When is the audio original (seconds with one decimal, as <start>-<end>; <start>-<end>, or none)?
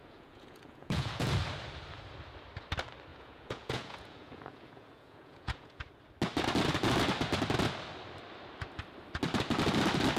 1.3-3.1; 5.8-10.2